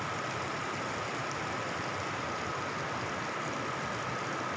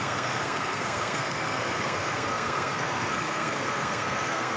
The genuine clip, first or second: first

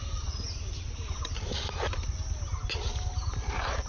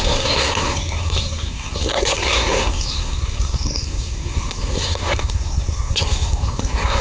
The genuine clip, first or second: first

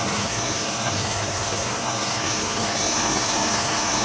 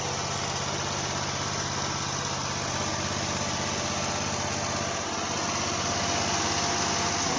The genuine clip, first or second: second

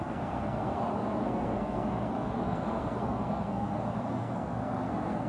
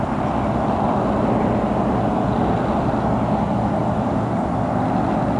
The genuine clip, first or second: second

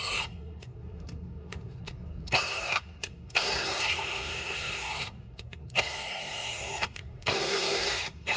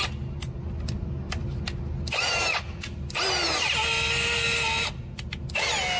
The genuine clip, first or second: second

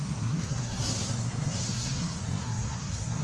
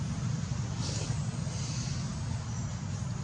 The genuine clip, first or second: second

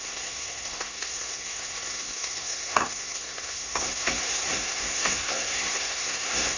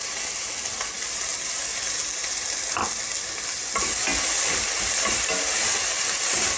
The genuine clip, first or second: second